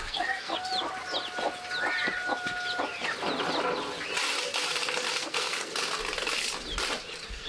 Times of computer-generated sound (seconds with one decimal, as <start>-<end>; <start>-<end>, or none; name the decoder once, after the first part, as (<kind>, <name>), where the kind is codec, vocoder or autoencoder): 0.0-0.7 (codec, SNAC); 5.2-5.7; 7.1-7.5